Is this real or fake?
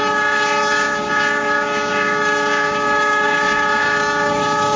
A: fake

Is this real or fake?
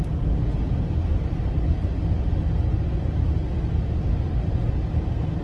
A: real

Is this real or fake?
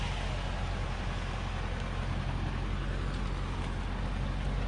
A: real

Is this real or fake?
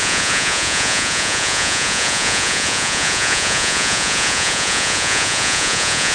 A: fake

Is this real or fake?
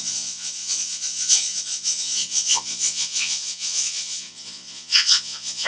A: fake